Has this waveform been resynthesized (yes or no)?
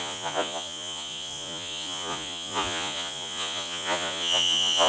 yes